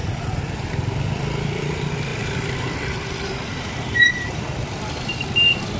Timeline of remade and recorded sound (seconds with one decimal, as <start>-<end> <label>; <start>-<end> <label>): 0.0-2.1 recorded; 2.1-5.8 remade